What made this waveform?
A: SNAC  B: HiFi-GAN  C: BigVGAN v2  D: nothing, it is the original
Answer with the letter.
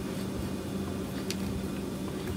D